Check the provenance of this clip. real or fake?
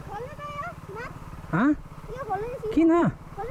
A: fake